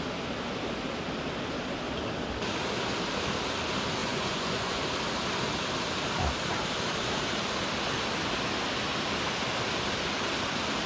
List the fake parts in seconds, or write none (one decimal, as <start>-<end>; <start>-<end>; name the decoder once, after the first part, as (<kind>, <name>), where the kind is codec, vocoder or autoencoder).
4.0-4.8 (vocoder, Vocos)